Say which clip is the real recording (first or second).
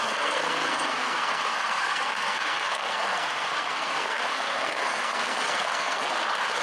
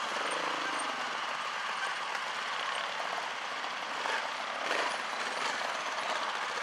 second